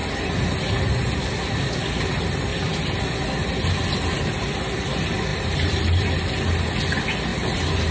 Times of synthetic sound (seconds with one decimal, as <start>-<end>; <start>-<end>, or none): 2.5-3.0; 5.3-6.7; 7.3-7.9